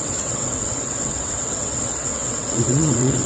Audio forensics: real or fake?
fake